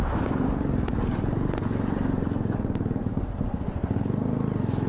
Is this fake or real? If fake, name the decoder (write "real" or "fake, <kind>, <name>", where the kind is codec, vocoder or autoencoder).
real